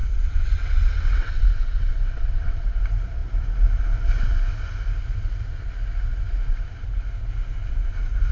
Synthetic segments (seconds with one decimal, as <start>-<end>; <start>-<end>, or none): 0.0-2.8